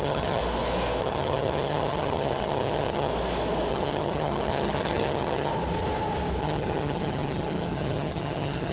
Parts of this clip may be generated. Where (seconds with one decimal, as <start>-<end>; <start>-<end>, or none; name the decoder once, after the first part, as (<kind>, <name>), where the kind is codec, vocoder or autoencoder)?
0.0-0.4 (vocoder, HiFi-GAN); 1.0-3.1; 3.7-5.5; 6.4-8.7